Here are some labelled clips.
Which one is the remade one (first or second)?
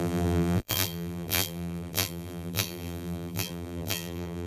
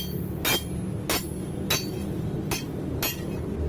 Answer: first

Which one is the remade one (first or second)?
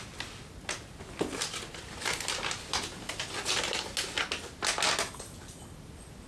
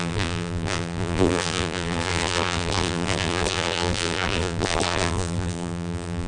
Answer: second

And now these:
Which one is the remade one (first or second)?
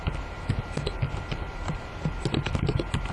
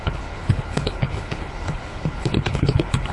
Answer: second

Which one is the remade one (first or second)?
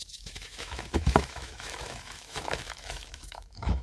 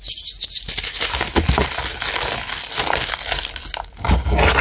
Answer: first